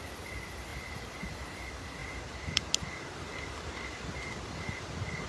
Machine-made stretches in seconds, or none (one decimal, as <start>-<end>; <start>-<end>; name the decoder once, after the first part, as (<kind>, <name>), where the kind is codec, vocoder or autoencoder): none